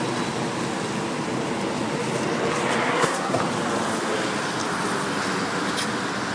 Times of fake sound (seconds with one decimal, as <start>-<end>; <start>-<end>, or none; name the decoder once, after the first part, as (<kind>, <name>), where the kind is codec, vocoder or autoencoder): 2.8-3.4 (codec, SNAC)